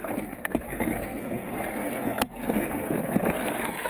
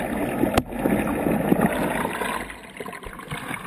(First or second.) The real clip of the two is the second